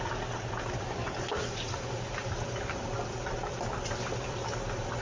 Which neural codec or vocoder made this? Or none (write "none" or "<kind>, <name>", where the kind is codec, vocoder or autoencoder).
vocoder, BigVGAN v2